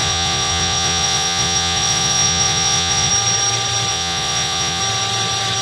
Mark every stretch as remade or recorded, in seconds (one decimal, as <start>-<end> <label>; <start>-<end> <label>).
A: 0.0-3.1 remade; 3.1-3.9 recorded; 3.9-4.8 remade; 4.8-5.6 recorded